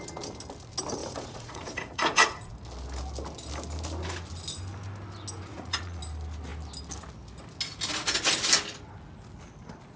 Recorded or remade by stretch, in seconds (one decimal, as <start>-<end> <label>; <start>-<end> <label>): 0.0-1.0 recorded; 1.0-2.5 remade; 2.5-5.5 recorded; 5.5-6.0 remade; 6.0-10.0 recorded